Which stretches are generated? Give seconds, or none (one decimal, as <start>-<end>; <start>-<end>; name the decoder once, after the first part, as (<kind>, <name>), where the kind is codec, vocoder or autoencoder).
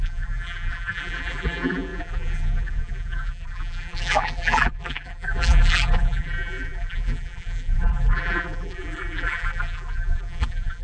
0.0-10.8 (vocoder, BigVGAN v2)